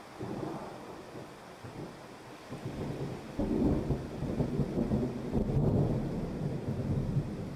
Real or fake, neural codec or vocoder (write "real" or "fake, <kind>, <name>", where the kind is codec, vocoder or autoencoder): real